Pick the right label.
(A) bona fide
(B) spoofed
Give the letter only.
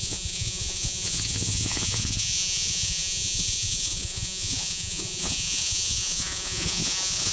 B